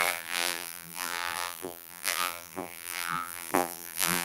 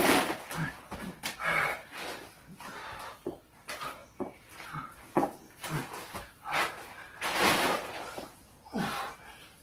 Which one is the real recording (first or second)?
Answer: second